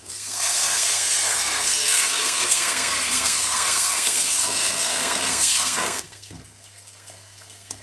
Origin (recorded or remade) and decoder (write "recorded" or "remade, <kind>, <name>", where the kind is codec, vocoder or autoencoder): remade, codec, SNAC